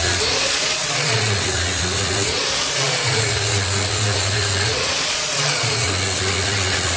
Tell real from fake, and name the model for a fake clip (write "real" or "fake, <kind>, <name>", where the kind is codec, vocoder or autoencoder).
fake, vocoder, Vocos